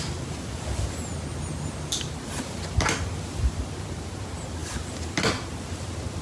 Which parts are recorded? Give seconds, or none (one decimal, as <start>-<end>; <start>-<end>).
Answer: 0.0-6.2